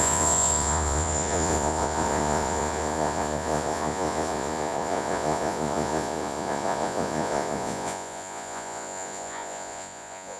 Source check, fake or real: fake